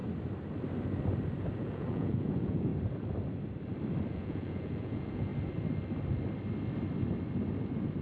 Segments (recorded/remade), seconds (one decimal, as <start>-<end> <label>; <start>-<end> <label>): 0.0-1.6 recorded; 1.6-2.7 remade; 2.7-4.1 recorded; 4.1-5.3 remade; 5.3-8.0 recorded